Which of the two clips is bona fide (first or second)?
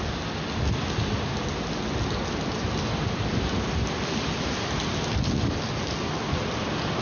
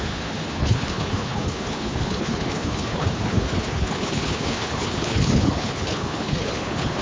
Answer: first